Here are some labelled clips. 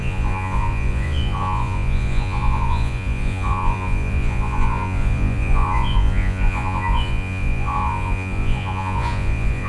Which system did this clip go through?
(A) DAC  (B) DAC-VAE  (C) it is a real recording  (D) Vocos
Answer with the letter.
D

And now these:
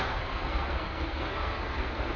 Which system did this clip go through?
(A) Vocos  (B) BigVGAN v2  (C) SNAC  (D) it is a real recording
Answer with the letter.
C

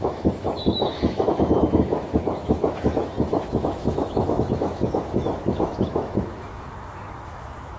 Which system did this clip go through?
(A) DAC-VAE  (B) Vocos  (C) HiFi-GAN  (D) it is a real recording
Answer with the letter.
A